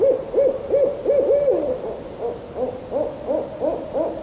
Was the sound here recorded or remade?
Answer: recorded